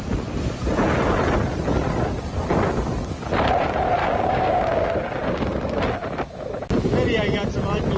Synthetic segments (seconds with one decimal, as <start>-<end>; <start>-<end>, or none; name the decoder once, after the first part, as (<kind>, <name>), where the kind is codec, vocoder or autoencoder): 4.0-4.9 (codec, DAC)